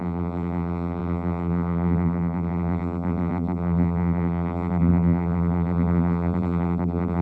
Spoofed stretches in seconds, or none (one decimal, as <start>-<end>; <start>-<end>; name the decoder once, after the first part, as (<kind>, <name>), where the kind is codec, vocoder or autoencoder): 0.0-7.2 (vocoder, BigVGAN v2)